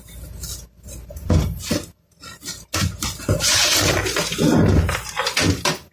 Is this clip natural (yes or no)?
yes